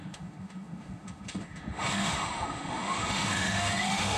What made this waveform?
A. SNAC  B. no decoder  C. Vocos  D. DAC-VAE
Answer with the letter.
D